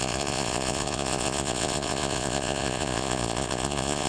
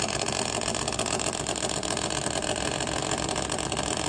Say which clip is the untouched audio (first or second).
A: second